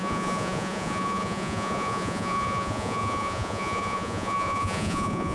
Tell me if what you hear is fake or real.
fake